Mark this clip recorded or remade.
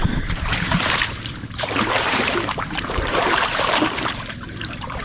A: remade